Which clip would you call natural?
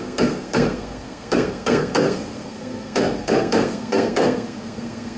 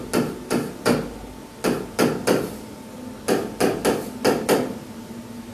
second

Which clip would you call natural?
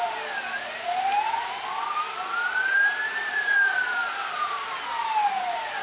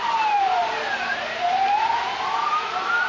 first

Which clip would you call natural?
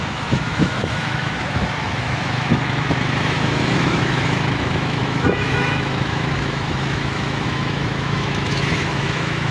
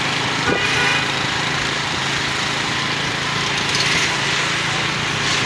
second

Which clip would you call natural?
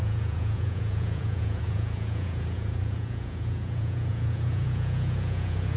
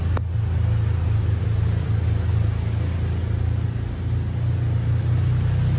second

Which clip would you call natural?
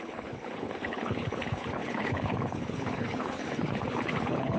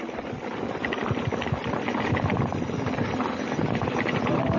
second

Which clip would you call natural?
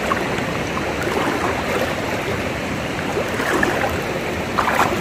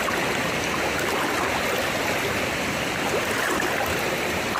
second